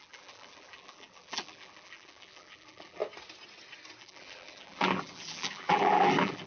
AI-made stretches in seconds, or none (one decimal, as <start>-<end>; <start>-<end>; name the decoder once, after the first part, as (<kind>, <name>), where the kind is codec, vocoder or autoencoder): 0.0-3.0 (vocoder, BigVGAN v2); 4.0-6.5